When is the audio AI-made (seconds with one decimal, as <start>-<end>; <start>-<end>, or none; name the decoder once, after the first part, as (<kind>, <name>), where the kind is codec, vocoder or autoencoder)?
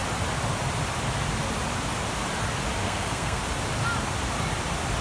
2.8-3.4 (codec, SNAC)